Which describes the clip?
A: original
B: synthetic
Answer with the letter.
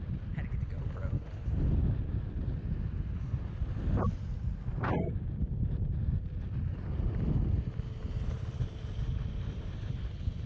A